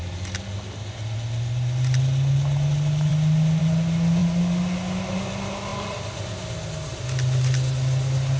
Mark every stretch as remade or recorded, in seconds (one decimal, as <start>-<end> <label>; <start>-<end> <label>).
0.0-8.4 recorded